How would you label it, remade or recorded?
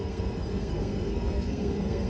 remade